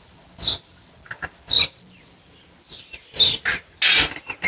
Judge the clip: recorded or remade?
recorded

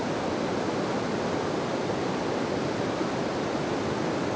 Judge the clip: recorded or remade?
recorded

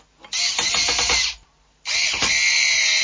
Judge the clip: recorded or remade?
recorded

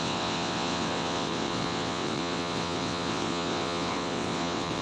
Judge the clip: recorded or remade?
remade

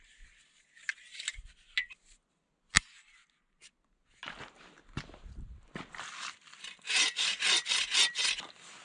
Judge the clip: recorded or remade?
recorded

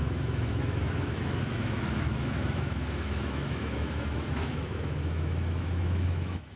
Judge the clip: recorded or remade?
remade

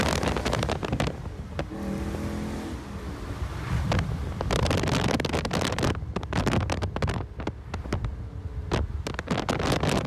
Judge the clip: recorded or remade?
recorded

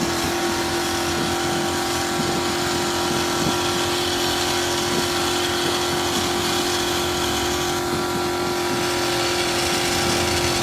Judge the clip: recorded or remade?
recorded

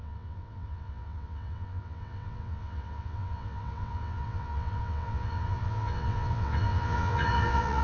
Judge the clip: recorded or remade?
remade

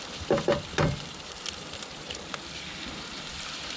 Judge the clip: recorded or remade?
remade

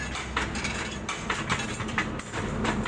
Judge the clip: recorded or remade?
recorded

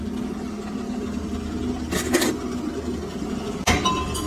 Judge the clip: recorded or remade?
remade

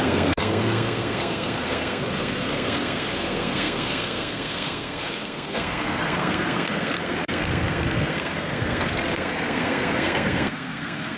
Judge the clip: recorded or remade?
remade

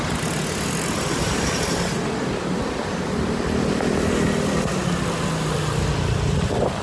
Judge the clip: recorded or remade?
recorded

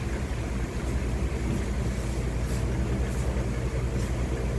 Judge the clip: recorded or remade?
recorded